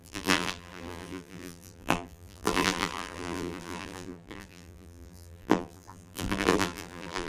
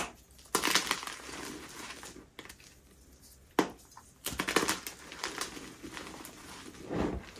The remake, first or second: first